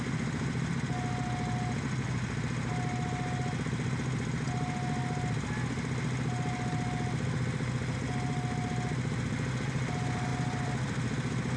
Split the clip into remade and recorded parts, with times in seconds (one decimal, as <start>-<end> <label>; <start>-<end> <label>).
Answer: 0.0-10.3 recorded; 10.3-11.6 remade